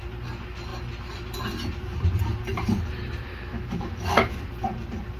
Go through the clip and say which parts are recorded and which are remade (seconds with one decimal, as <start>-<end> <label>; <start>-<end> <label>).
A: 0.0-3.3 recorded; 3.3-4.4 remade; 4.4-5.2 recorded